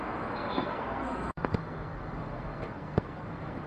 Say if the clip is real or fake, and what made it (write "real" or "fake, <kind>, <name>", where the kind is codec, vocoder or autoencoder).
fake, codec, SNAC